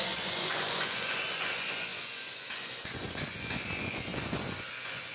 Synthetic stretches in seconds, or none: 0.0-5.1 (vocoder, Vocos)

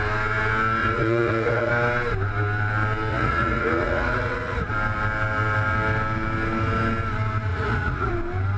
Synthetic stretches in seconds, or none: 0.8-1.7 (vocoder, Vocos); 3.1-4.7; 7.5-8.1

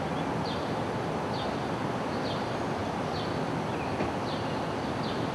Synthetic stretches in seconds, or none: none